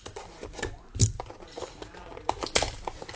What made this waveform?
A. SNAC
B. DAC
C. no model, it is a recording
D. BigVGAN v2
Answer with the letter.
D